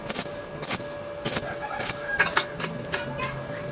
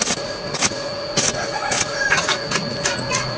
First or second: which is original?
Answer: first